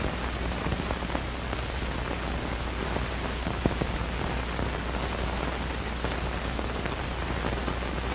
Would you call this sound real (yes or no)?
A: yes